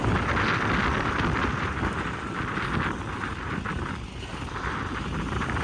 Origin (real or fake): real